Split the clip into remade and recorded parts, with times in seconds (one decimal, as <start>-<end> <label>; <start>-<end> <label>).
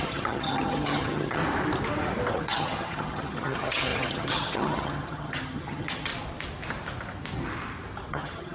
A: 0.0-1.4 remade; 1.4-2.3 recorded; 2.3-6.1 remade; 6.1-8.1 recorded; 8.1-8.5 remade